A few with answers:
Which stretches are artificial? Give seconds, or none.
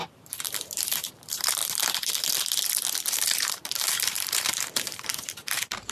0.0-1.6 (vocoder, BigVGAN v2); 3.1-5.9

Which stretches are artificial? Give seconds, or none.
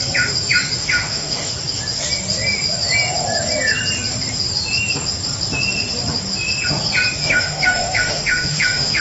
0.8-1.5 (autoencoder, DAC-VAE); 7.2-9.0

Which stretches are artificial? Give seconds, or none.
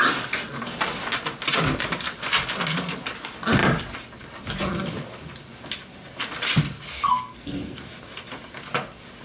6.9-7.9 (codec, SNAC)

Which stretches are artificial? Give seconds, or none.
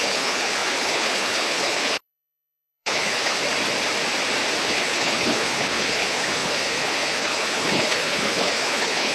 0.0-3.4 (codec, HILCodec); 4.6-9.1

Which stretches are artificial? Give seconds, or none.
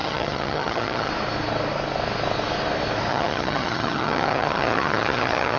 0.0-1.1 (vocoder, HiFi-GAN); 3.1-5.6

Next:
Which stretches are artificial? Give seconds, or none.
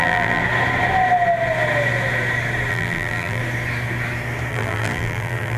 0.0-0.4 (vocoder, BigVGAN v2); 2.7-3.4; 4.5-5.6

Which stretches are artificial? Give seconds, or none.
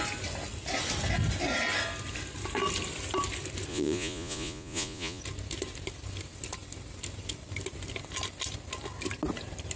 3.7-5.2 (vocoder, Vocos)